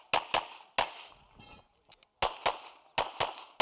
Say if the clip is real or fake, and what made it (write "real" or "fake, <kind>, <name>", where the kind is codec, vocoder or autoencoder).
real